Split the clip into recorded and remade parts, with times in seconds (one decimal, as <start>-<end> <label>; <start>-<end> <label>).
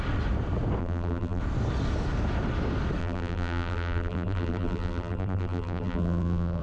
0.0-0.8 recorded; 0.8-1.4 remade; 1.4-3.0 recorded; 3.0-6.6 remade